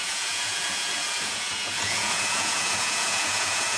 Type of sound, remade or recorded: remade